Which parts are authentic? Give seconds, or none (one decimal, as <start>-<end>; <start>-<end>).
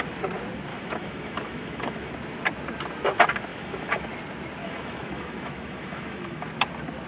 0.0-0.7; 2.1-3.5; 4.1-4.6; 6.5-7.1